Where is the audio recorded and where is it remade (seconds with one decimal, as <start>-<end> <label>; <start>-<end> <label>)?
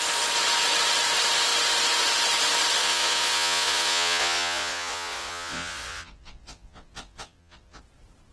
0.0-2.8 recorded; 2.8-7.8 remade; 7.8-8.3 recorded